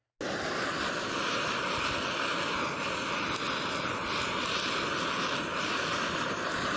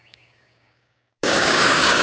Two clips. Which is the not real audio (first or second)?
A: second